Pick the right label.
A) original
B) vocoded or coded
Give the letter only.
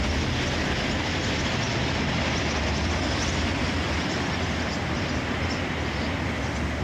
A